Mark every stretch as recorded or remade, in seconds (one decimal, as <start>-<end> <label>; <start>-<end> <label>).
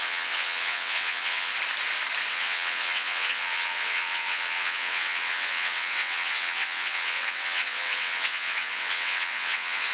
0.0-1.5 remade; 1.5-2.3 recorded; 2.3-9.9 remade